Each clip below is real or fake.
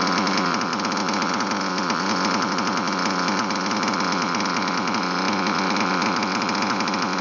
real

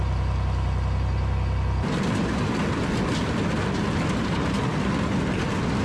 real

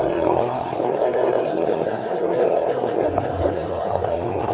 fake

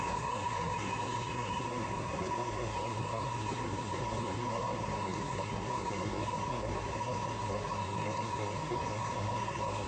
fake